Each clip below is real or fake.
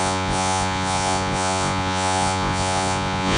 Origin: fake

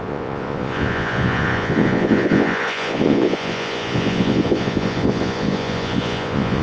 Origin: fake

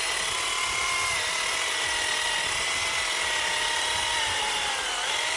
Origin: real